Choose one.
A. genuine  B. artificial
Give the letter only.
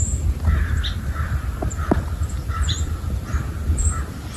A